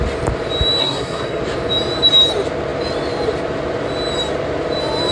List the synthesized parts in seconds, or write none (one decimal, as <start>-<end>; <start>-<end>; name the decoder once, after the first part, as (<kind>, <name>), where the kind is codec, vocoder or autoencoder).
0.8-1.4 (codec, SNAC)